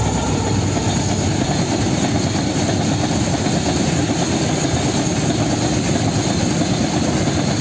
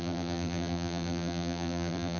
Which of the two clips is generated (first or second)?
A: second